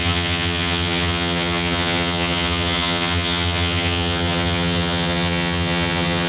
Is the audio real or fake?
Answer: fake